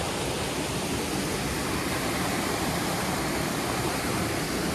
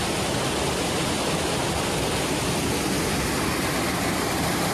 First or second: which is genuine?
second